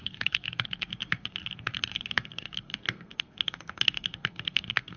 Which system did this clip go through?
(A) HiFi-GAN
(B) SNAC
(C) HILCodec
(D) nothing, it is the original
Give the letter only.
B